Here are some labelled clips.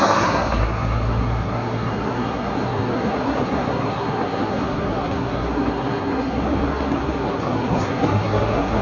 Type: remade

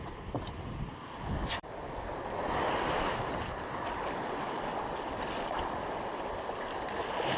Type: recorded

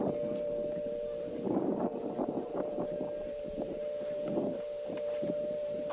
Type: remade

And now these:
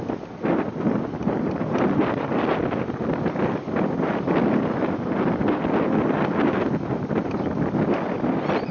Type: recorded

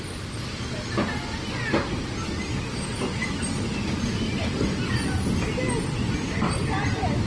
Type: recorded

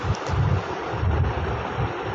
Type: recorded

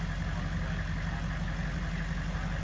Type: recorded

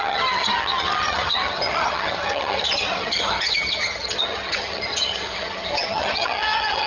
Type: remade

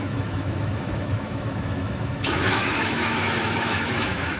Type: remade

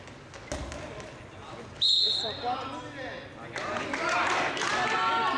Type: recorded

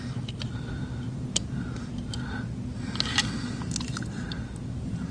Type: recorded